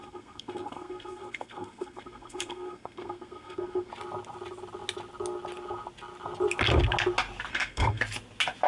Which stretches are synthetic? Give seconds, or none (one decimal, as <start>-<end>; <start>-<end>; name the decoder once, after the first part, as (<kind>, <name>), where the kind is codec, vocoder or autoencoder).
0.0-3.9 (codec, SNAC); 7.5-8.0